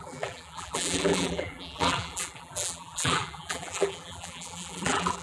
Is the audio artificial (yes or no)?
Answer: yes